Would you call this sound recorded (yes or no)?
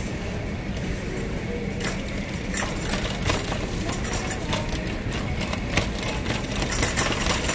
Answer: yes